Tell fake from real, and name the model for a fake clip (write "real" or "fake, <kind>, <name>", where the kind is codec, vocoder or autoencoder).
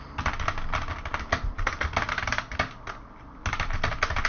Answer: real